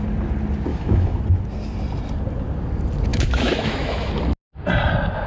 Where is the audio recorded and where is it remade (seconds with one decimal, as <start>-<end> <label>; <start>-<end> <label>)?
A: 0.0-0.7 recorded; 0.7-1.2 remade; 1.2-3.1 recorded; 3.1-4.1 remade; 4.1-5.3 recorded